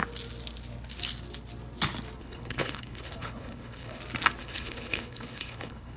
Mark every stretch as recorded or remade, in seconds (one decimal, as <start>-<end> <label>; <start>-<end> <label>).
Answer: 0.0-2.2 recorded; 2.2-4.0 remade; 4.0-4.4 recorded; 4.4-6.0 remade